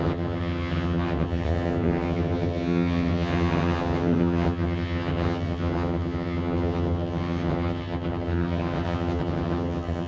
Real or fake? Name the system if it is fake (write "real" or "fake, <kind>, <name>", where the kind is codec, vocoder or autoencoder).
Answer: fake, vocoder, HiFi-GAN